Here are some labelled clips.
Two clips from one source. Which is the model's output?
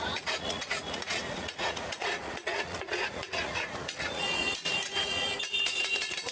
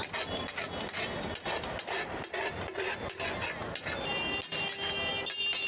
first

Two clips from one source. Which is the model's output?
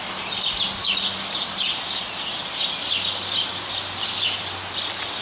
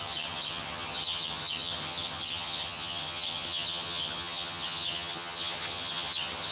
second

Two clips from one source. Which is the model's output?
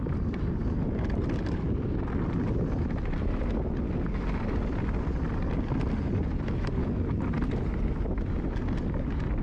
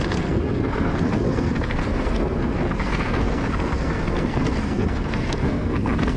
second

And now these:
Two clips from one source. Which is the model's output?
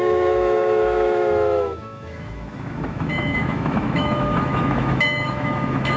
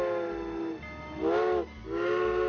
first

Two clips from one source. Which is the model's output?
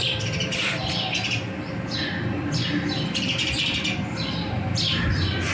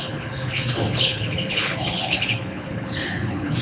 second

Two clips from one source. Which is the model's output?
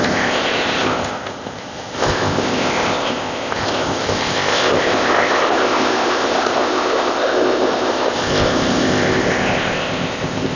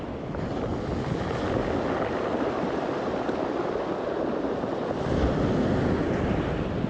first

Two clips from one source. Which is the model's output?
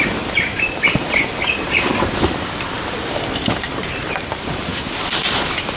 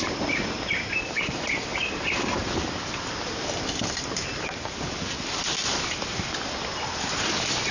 first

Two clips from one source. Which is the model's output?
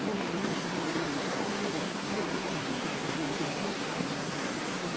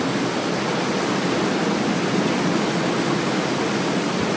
first